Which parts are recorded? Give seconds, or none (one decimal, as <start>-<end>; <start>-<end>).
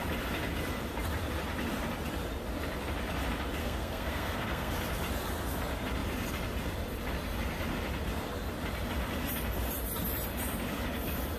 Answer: 0.0-3.6; 4.7-11.4